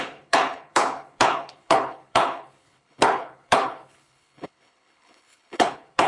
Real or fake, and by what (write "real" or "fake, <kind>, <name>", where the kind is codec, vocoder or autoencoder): fake, codec, HILCodec